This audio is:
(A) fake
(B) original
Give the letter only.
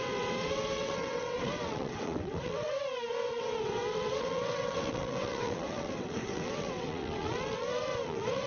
A